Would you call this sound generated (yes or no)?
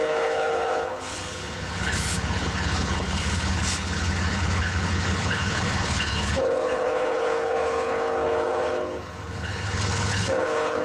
yes